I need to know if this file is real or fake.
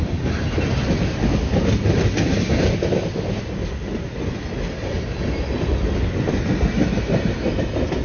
real